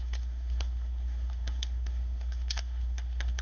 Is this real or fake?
fake